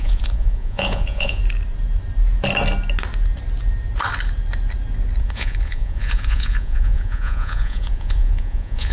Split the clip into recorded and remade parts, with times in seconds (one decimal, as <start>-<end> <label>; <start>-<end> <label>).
0.0-1.4 remade; 1.4-5.2 recorded; 5.2-8.9 remade